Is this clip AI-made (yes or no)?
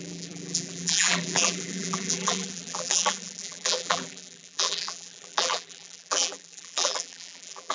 yes